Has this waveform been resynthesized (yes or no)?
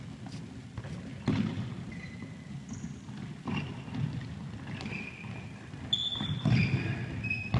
no